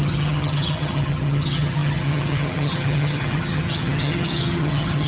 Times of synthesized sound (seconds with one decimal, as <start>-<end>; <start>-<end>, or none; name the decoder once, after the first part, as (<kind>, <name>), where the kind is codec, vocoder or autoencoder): 0.0-5.1 (vocoder, HiFi-GAN)